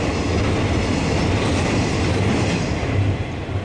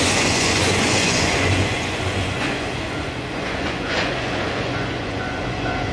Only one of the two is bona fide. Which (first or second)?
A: first